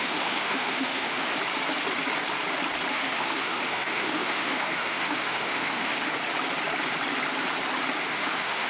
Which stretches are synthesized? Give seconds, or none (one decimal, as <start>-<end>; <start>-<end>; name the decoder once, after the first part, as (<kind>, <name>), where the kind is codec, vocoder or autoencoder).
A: 0.0-1.3 (autoencoder, DAC-VAE); 2.9-6.1; 8.1-8.7